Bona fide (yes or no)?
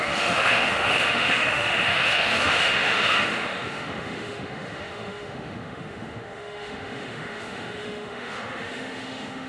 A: no